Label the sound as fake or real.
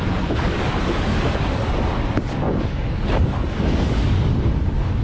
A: fake